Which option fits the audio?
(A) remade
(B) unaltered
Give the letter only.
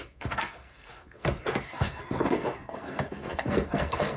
A